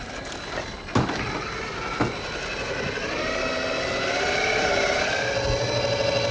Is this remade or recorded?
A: recorded